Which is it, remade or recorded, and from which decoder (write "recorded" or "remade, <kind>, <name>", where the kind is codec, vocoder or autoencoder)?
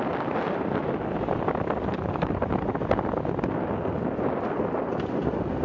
recorded